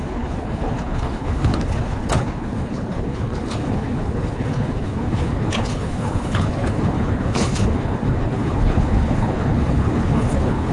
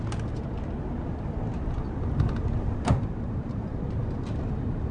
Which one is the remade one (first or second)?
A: first